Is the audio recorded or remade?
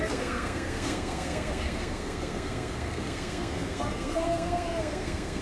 remade